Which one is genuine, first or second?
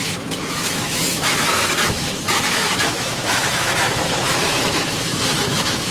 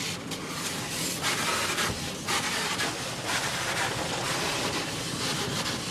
second